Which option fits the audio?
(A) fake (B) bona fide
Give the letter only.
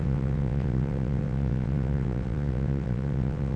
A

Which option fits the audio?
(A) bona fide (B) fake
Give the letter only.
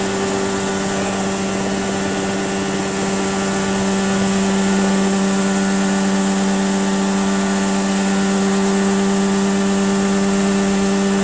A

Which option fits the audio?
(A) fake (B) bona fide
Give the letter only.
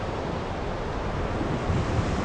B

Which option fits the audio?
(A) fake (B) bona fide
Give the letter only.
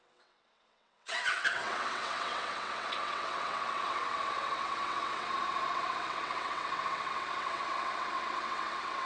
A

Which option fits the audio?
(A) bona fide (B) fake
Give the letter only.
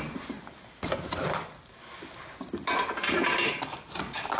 A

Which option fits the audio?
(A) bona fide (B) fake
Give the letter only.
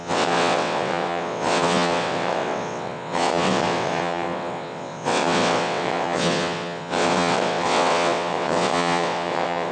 B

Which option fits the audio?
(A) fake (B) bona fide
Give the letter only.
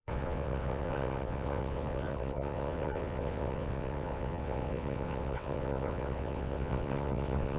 A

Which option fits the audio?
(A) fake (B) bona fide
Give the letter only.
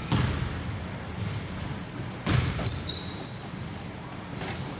B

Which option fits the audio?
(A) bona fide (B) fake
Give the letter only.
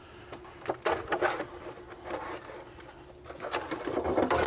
A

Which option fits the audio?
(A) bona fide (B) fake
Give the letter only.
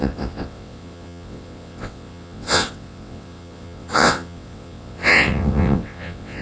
B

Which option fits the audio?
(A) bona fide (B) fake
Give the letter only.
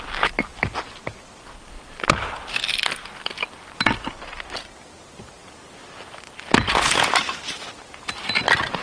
A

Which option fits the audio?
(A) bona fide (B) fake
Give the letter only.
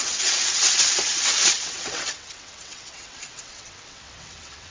B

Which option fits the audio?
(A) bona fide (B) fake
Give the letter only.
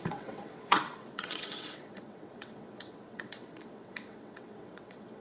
B